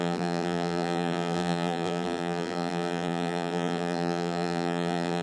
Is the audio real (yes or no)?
no